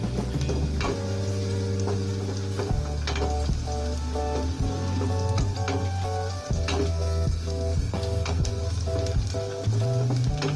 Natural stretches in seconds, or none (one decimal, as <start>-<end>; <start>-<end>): 0.0-6.9; 8.6-10.6